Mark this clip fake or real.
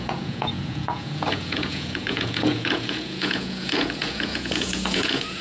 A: fake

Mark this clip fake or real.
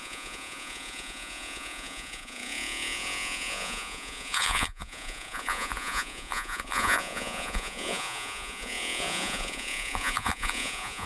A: fake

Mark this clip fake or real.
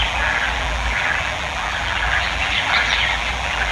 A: fake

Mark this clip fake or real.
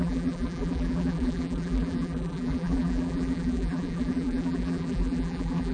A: fake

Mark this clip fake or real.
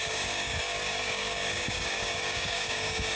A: fake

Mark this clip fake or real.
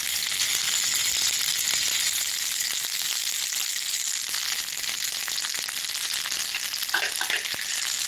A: real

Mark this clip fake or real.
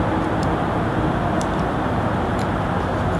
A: fake